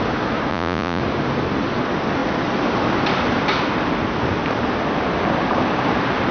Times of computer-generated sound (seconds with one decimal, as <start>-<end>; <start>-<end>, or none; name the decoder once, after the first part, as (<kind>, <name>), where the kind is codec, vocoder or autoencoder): 0.5-1.0 (vocoder, Vocos)